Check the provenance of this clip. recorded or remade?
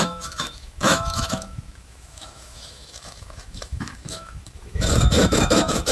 remade